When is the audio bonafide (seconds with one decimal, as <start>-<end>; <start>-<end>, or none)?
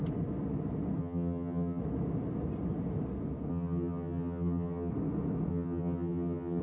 0.0-1.0; 1.8-3.5; 4.9-5.5